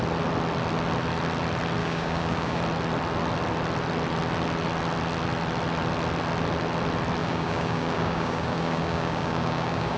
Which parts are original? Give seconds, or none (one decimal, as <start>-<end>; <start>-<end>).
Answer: 0.0-1.8; 2.6-7.2

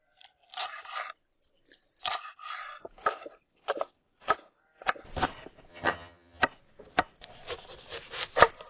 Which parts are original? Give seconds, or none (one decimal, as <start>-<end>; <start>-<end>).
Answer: 0.0-5.7; 6.4-8.7

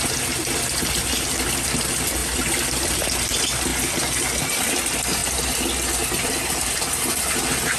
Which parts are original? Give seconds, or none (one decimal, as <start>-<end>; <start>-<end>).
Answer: 0.0-7.8

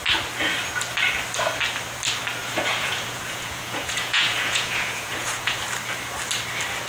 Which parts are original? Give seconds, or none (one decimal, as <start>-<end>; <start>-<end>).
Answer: 0.0-2.4; 5.6-6.9

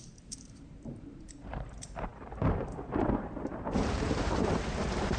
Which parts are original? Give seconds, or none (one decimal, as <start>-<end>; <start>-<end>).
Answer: none

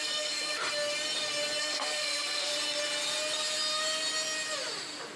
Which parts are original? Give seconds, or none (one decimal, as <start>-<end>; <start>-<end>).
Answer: 0.6-1.6; 2.5-5.2

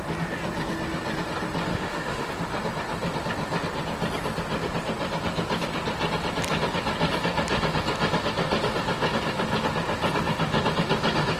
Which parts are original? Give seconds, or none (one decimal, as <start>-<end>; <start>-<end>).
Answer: 0.0-1.7; 2.3-11.4

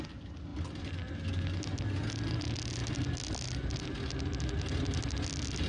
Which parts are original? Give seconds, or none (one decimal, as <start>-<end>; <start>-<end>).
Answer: 0.0-5.7